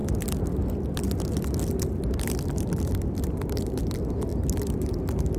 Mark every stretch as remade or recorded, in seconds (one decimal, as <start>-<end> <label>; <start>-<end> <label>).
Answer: 0.0-4.3 remade; 4.3-5.4 recorded